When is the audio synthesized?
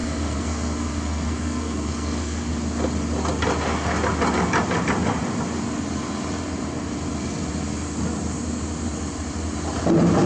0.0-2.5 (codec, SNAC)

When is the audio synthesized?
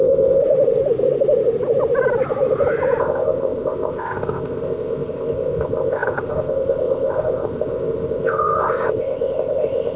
0.0-0.4 (codec, ZipCodec); 3.0-10.0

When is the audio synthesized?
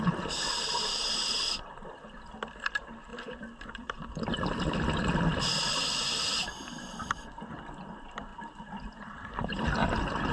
0.0-10.3 (vocoder, BigVGAN v2)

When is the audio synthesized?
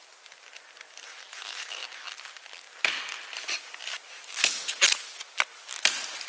none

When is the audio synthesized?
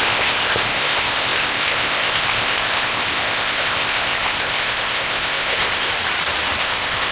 0.0-5.9 (codec, ZipCodec); 6.6-7.1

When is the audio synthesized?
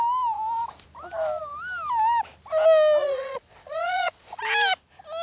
3.0-4.4 (vocoder, Vocos)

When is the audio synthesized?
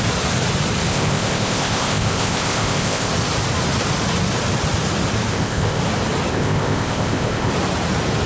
0.9-3.1 (codec, ZipCodec); 5.3-5.8; 6.3-7.5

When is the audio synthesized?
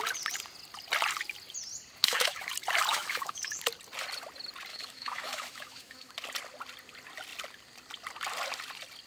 2.0-2.5 (autoencoder, DAC-VAE); 2.9-3.6; 4.7-6.1